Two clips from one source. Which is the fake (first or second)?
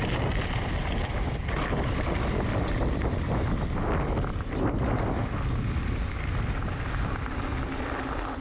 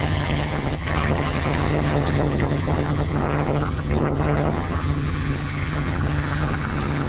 second